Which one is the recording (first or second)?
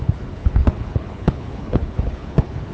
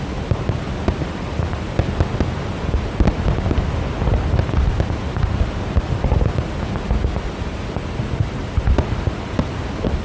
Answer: second